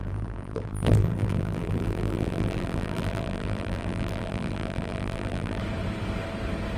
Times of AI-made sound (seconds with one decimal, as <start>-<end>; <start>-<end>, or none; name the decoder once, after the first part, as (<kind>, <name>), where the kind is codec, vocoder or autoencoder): 0.0-5.6 (vocoder, BigVGAN v2)